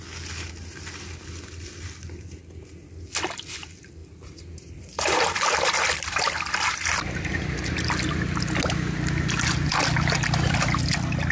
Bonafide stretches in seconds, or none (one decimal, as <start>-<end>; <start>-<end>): 0.0-4.0; 7.3-11.3

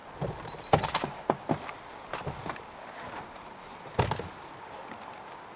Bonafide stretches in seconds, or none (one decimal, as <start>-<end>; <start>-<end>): 0.0-5.6

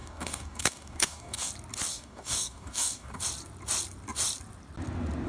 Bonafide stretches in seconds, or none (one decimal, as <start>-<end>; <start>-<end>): 1.5-1.9; 3.2-5.3

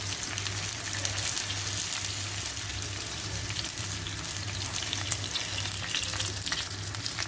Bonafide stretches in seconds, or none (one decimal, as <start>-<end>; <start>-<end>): 0.0-2.7; 5.3-7.3

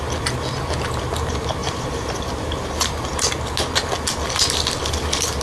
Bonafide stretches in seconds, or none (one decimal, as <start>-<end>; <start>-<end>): 0.0-1.6; 3.3-5.4